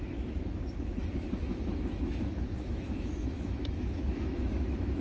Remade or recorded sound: remade